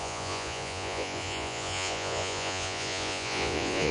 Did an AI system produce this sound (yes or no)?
yes